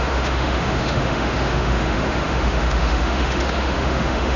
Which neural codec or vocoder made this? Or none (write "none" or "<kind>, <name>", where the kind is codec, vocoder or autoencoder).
autoencoder, DAC-VAE